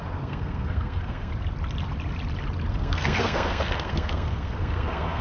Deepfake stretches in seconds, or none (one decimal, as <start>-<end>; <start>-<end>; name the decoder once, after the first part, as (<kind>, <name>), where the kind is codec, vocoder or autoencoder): 0.0-1.3 (codec, SNAC); 2.7-5.2